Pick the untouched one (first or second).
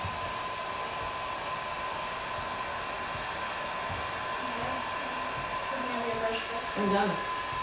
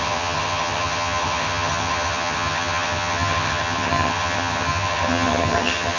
first